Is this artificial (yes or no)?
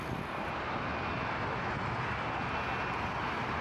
no